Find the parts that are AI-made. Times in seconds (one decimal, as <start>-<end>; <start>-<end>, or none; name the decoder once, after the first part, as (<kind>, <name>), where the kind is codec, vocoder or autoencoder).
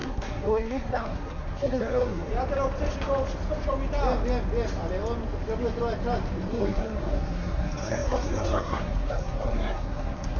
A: 0.0-2.3 (codec, SNAC); 6.5-10.4